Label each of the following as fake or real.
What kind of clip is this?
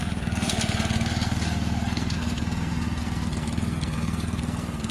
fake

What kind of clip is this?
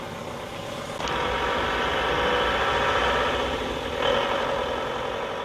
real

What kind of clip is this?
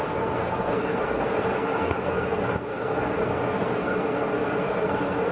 fake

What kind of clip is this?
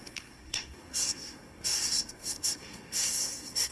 fake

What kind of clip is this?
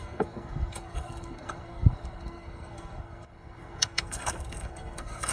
fake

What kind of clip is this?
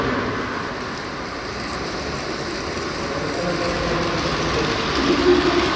real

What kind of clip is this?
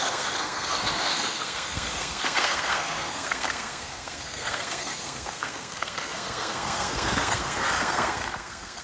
fake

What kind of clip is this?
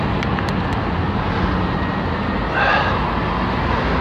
real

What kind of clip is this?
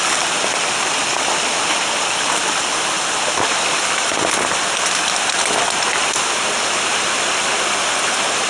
real